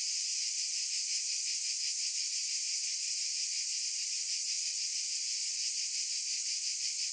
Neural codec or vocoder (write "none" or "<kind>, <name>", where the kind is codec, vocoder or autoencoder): none